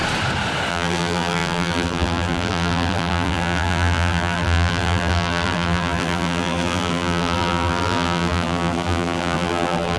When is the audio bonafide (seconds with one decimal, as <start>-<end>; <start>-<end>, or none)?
0.0-0.7